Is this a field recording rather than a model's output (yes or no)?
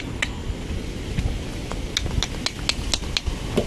yes